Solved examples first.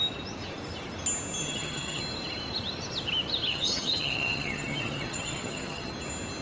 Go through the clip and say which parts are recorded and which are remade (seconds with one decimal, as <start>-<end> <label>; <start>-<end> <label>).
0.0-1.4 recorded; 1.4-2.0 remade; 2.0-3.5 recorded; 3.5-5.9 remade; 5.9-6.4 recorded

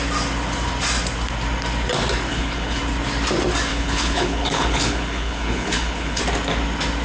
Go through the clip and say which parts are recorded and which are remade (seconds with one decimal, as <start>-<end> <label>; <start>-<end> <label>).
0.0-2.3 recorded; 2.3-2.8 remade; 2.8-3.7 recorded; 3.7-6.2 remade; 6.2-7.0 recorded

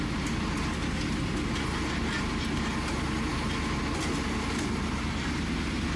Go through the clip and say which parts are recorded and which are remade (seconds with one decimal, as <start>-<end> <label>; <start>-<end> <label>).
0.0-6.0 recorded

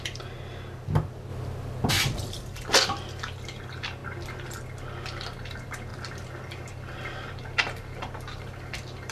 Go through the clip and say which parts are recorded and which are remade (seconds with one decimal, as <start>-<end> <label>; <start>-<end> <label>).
0.0-1.3 remade; 1.3-1.9 recorded; 1.9-4.0 remade; 4.0-5.5 recorded; 5.5-9.1 remade

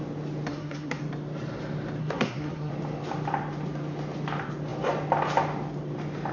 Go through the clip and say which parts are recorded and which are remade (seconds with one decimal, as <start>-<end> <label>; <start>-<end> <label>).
0.0-0.5 recorded; 0.5-1.0 remade; 1.0-2.0 recorded; 2.0-2.7 remade; 2.7-6.3 recorded

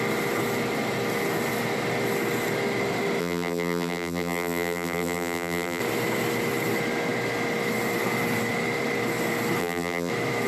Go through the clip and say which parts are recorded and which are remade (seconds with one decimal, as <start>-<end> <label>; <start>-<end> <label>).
0.0-3.2 recorded; 3.2-5.8 remade; 5.8-9.6 recorded; 9.6-10.1 remade; 10.1-10.5 recorded

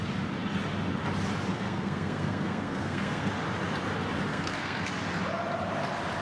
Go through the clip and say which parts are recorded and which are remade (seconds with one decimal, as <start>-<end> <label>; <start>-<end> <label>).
0.0-1.5 recorded; 1.5-3.3 remade; 3.3-4.3 recorded; 4.3-4.9 remade; 4.9-6.2 recorded

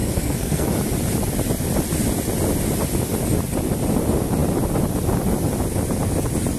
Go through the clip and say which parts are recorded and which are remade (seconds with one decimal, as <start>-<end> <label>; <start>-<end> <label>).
0.0-0.7 remade; 0.7-6.6 recorded